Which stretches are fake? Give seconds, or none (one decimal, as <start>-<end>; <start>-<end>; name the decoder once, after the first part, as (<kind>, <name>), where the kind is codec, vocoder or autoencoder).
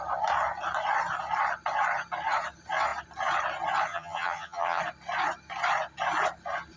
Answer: 3.9-4.8 (vocoder, HiFi-GAN)